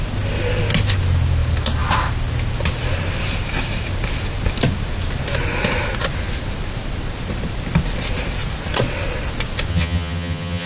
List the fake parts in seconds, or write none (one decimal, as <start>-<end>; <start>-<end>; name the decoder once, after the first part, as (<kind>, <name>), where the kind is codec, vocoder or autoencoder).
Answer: 9.7-10.7 (vocoder, HiFi-GAN)